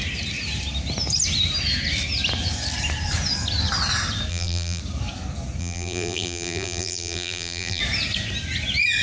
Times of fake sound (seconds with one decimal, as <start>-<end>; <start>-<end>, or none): 4.3-4.8; 5.6-7.8